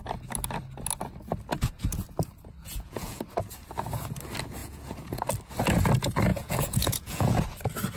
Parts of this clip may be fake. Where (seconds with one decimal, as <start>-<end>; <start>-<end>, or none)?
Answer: 2.6-3.2; 4.6-5.2; 6.3-7.4